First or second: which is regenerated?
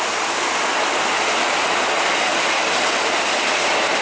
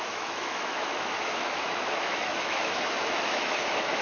second